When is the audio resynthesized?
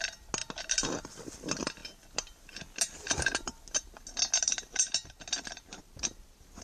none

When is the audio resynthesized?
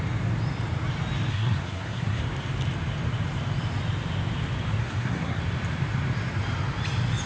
1.3-2.2 (codec, SNAC); 4.8-5.4